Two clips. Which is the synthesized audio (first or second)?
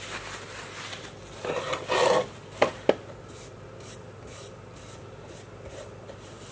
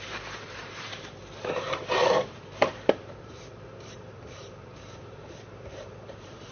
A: second